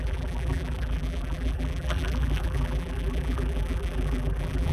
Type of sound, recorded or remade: remade